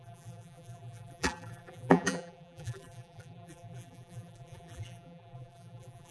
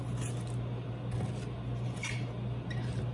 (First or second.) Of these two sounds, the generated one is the first